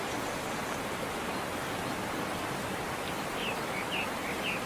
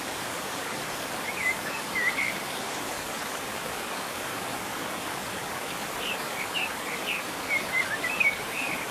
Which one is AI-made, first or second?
second